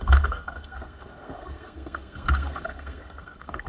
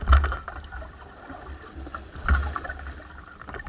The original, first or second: second